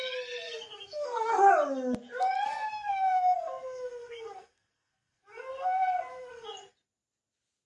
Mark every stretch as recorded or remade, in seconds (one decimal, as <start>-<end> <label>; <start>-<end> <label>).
0.0-0.7 recorded; 0.7-1.5 remade; 1.5-2.7 recorded; 2.7-6.5 remade; 6.5-7.7 recorded